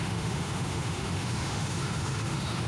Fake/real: fake